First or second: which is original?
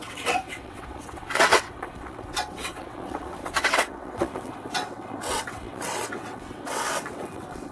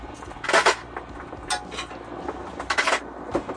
second